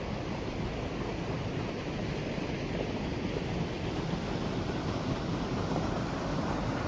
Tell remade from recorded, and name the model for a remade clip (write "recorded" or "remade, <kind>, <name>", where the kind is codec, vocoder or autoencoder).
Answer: recorded